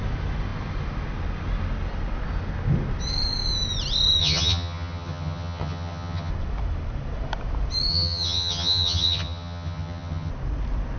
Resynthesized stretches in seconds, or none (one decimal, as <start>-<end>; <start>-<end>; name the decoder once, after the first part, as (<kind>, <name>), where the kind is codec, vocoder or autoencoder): 4.2-6.3 (vocoder, HiFi-GAN); 7.9-10.3